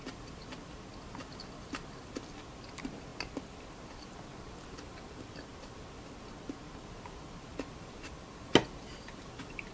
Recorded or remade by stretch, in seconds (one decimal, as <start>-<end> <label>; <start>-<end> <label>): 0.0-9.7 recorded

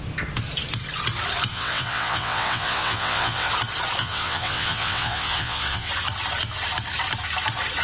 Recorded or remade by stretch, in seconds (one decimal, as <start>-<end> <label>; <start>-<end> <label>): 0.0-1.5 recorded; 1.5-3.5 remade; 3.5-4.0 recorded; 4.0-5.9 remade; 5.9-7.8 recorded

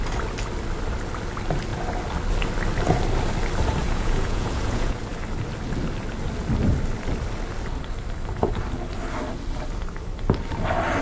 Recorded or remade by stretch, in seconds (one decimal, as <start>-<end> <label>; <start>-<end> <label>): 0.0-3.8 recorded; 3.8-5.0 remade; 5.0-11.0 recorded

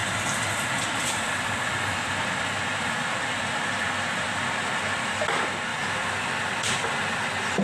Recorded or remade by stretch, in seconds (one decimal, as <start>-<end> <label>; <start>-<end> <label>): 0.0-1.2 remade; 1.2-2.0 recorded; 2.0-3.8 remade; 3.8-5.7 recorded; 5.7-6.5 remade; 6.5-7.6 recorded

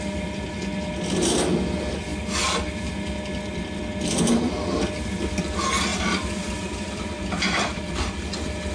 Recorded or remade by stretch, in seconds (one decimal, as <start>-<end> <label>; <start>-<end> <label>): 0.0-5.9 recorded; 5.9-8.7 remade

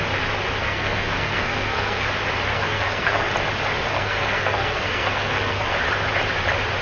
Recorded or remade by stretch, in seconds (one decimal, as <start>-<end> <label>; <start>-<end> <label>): 0.0-0.6 recorded; 0.6-2.1 remade; 2.1-2.5 recorded; 2.5-3.3 remade; 3.3-3.9 recorded; 3.9-5.8 remade; 5.8-6.8 recorded